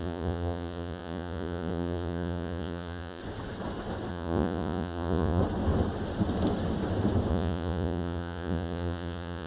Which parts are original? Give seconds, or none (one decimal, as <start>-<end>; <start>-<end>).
3.2-4.1; 5.4-7.3